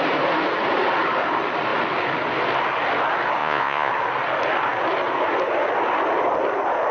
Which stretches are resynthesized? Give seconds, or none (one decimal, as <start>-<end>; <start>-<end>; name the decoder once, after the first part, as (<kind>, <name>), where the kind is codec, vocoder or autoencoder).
3.4-3.9 (vocoder, Vocos)